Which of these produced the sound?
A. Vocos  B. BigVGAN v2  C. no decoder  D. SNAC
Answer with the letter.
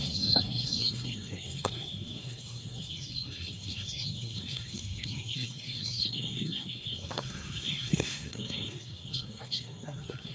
D